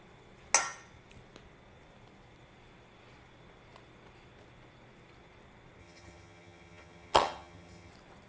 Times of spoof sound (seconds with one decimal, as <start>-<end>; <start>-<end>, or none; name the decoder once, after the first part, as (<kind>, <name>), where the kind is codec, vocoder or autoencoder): 5.8-7.9 (vocoder, HiFi-GAN)